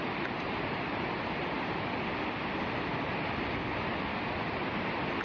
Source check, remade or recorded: recorded